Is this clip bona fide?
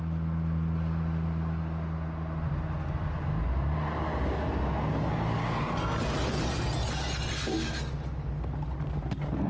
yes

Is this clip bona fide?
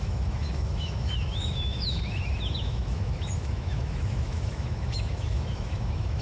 no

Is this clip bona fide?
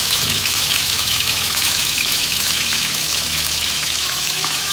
no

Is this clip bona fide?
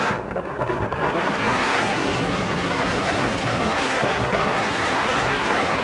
no